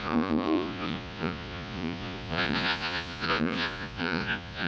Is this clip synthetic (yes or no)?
yes